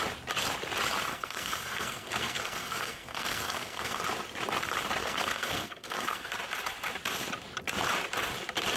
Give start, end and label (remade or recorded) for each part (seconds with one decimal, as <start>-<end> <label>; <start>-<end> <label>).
0.0-1.1 recorded; 1.1-4.0 remade; 4.0-5.0 recorded; 5.0-6.3 remade; 6.3-8.8 recorded